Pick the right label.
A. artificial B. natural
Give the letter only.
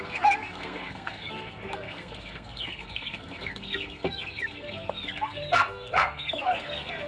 A